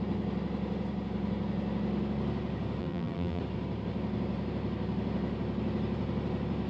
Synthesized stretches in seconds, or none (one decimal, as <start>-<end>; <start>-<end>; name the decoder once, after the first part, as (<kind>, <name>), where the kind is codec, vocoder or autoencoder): 2.8-3.4 (vocoder, BigVGAN v2)